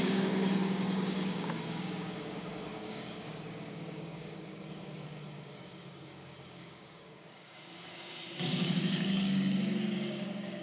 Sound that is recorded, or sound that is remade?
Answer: remade